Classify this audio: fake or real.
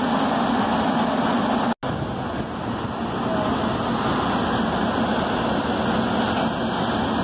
real